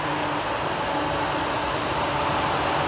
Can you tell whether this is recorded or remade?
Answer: recorded